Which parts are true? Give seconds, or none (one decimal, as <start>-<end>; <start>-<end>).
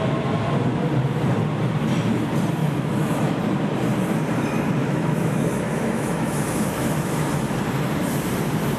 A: 0.0-2.6; 3.4-4.8; 7.3-8.8